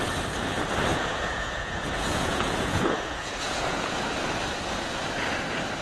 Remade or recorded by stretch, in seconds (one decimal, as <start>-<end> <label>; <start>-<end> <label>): 0.0-0.9 recorded; 0.9-4.2 remade; 4.2-5.8 recorded